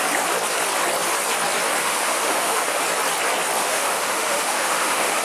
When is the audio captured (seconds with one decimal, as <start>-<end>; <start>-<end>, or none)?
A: 0.0-1.8; 2.8-3.6